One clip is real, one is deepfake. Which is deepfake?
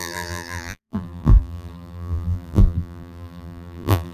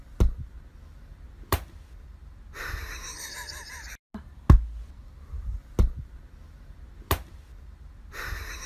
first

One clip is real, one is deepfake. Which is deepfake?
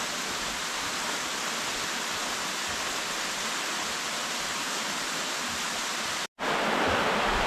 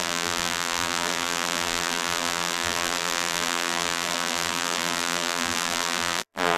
second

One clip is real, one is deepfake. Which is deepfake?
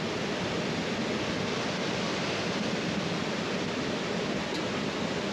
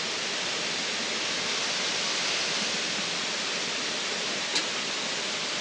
second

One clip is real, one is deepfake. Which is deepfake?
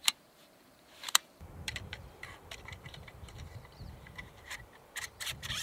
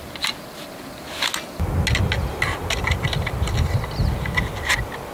first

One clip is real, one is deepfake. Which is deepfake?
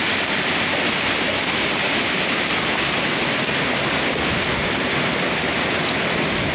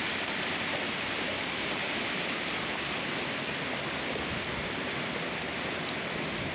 second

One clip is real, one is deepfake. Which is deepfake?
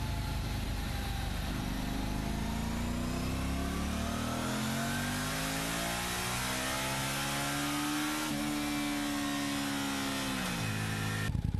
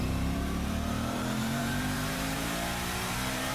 second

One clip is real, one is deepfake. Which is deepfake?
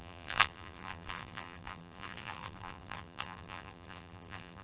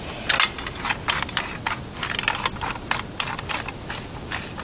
first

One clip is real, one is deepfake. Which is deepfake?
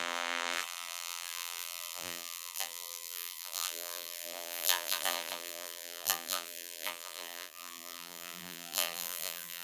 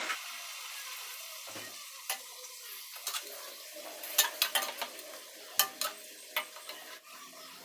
first